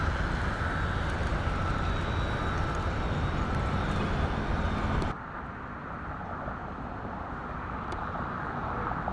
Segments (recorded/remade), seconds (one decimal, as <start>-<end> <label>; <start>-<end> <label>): 0.0-1.2 recorded; 1.2-1.9 remade; 1.9-9.1 recorded